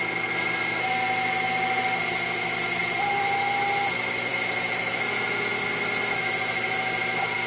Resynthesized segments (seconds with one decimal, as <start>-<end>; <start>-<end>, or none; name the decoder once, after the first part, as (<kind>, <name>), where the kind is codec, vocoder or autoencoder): 2.8-3.4 (vocoder, BigVGAN v2)